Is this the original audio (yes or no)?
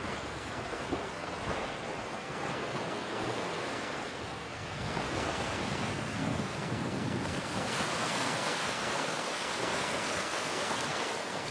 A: no